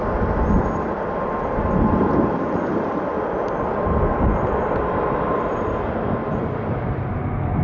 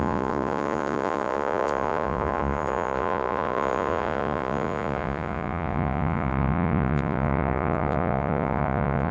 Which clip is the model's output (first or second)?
second